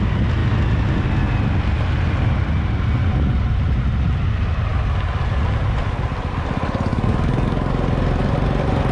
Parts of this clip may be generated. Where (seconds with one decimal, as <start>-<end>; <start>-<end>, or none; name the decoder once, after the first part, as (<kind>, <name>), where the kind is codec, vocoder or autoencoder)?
6.9-7.7 (codec, DAC)